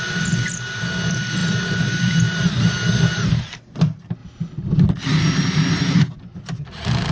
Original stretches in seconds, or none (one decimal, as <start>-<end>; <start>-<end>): 0.0-7.1